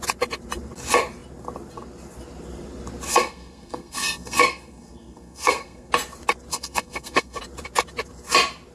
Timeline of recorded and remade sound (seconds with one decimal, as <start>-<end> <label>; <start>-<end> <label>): 0.0-3.1 recorded; 3.1-5.9 remade; 5.9-6.5 recorded; 6.5-7.4 remade; 7.4-8.7 recorded

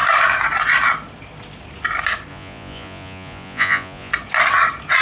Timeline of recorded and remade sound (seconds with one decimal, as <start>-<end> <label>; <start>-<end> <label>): 0.0-2.3 recorded; 2.3-4.1 remade; 4.1-5.0 recorded

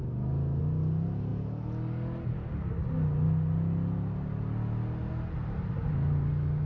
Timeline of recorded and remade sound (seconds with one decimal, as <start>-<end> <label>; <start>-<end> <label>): 0.0-6.7 recorded

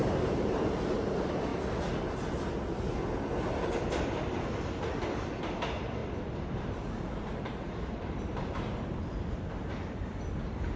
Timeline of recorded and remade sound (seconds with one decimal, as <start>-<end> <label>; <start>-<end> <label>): 0.0-0.6 remade; 0.6-6.0 recorded; 6.0-9.0 remade; 9.0-10.8 recorded